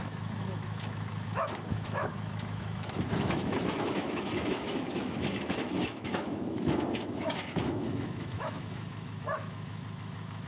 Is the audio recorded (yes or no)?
no